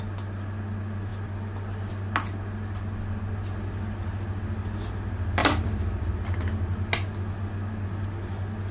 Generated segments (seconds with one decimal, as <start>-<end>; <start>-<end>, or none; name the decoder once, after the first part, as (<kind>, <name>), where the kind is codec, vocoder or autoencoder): 1.1-1.9 (vocoder, BigVGAN v2); 5.4-6.1